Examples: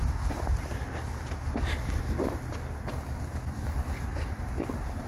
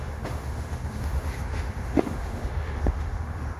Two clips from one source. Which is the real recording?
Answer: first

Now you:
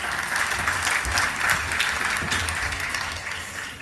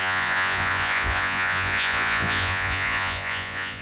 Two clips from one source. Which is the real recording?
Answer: first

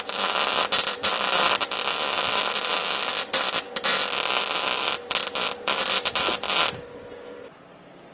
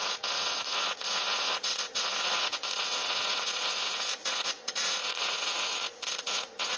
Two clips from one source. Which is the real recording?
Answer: first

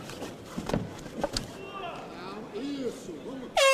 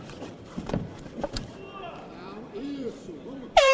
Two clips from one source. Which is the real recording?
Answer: first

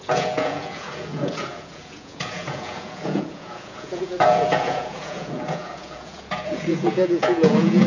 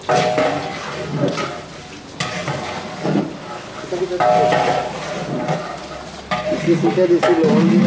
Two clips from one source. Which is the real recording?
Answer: second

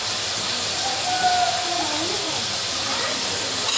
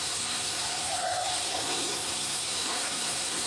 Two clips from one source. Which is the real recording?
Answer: first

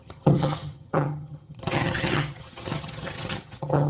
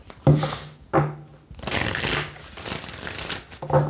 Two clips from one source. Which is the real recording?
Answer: second